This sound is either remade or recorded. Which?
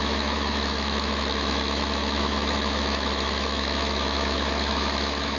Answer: remade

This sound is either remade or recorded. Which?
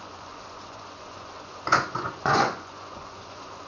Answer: remade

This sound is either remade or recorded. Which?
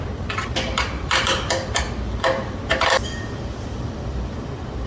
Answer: remade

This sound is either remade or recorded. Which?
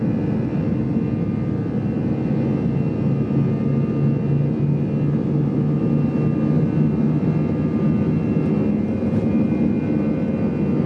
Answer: recorded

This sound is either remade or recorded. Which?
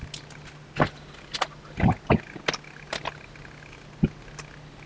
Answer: recorded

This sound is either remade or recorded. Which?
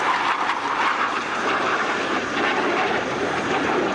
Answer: remade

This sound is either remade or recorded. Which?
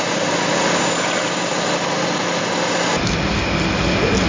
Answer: recorded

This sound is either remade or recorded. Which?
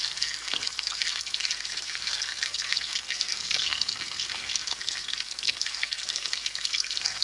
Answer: remade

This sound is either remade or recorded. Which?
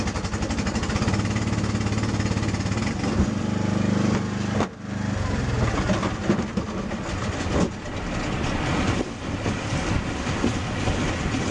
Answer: recorded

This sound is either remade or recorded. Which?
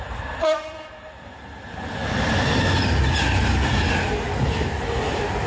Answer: recorded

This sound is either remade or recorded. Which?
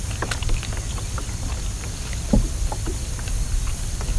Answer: recorded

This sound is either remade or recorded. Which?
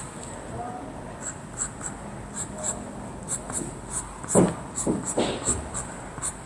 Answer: recorded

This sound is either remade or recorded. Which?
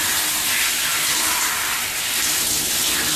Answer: recorded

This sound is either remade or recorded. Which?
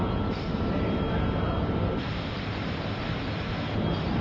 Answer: recorded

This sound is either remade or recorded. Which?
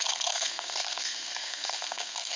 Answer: remade